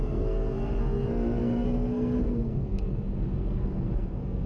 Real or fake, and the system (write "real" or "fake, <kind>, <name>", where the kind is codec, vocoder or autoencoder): fake, codec, SNAC